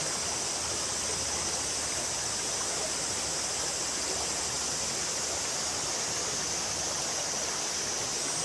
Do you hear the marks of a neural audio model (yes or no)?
no